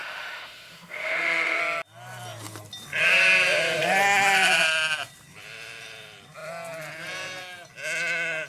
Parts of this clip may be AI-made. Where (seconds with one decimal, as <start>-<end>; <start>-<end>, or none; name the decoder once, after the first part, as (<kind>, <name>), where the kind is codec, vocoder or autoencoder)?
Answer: 0.0-1.6 (autoencoder, DAC-VAE)